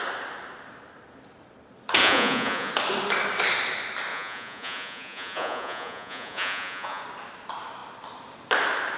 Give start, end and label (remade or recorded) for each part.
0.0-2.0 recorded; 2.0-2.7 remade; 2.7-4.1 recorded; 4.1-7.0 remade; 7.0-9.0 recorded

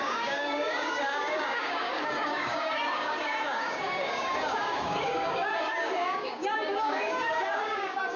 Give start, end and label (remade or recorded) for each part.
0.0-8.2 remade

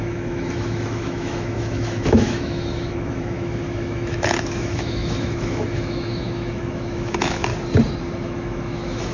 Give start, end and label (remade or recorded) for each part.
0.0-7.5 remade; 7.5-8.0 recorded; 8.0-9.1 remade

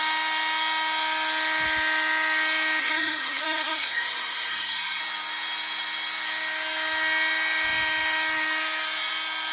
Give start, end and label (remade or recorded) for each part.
0.0-2.8 recorded; 2.8-5.0 remade; 5.0-9.5 recorded

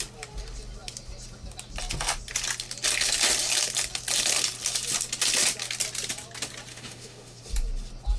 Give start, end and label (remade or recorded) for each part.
0.0-6.7 recorded; 6.7-7.4 remade; 7.4-8.2 recorded